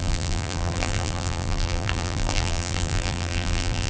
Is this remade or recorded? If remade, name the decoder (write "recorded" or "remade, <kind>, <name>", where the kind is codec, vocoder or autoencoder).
remade, vocoder, BigVGAN v2